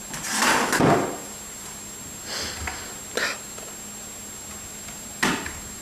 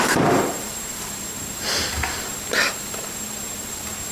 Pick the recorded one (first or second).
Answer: first